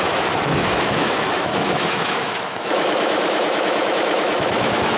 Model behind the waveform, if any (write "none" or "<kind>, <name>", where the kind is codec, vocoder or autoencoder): autoencoder, DAC-VAE